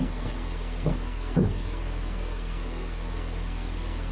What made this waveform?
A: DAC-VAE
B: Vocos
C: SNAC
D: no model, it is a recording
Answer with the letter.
C